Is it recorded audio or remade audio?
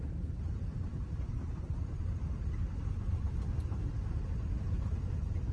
remade